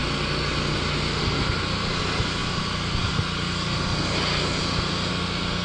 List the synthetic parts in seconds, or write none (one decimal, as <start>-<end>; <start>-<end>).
none